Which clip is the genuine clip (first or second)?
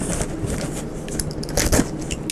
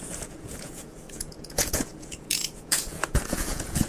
first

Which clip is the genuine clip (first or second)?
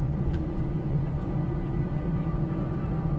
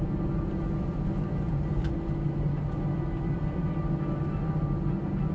second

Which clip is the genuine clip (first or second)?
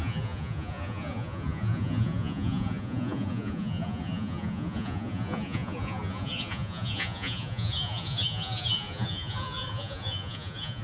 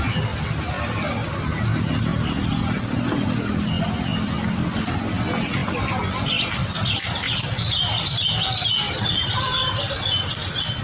second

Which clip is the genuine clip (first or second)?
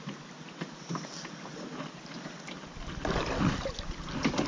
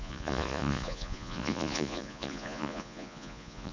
first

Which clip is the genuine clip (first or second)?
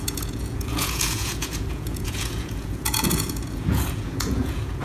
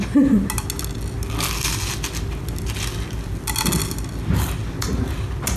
second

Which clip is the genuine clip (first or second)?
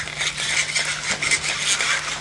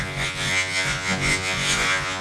first